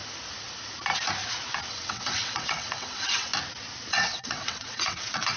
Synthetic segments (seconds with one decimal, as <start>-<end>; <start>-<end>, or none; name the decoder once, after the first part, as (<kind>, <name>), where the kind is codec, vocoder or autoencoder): 1.7-3.3 (vocoder, WaveNeXt); 3.9-5.4